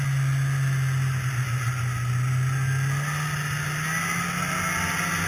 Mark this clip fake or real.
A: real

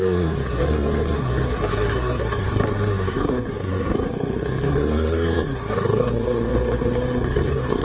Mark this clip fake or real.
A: fake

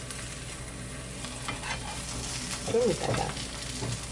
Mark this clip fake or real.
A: real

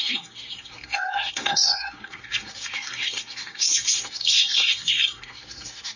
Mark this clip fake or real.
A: fake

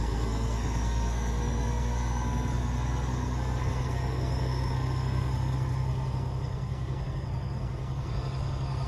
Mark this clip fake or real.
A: fake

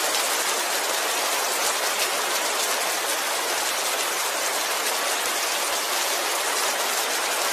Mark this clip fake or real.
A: real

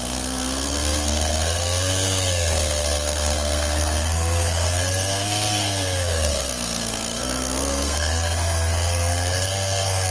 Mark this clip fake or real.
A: fake